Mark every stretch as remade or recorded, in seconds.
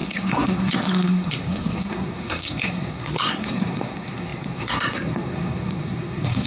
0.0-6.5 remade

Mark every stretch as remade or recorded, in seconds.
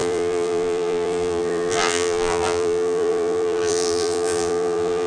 0.0-5.1 remade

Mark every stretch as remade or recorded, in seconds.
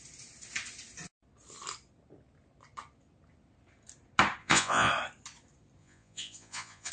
0.0-4.4 recorded; 4.4-4.9 remade; 4.9-5.8 recorded; 5.8-6.9 remade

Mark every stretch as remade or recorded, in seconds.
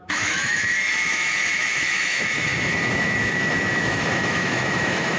0.0-5.2 remade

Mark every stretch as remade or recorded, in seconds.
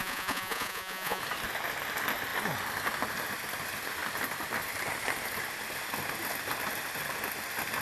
0.0-1.2 remade; 1.2-7.8 recorded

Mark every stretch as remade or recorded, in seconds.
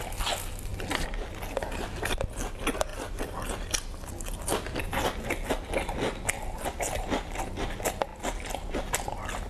0.0-9.5 recorded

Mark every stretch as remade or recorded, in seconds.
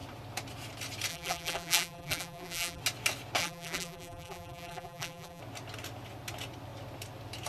0.0-1.1 recorded; 1.1-2.8 remade; 2.8-3.4 recorded; 3.4-5.4 remade; 5.4-7.5 recorded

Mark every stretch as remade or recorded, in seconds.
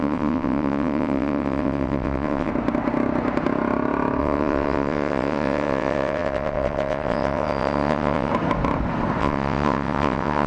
0.0-2.5 remade; 2.5-4.2 recorded; 4.2-8.3 remade; 8.3-9.2 recorded; 9.2-10.5 remade